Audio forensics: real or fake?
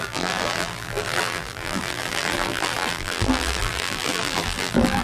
fake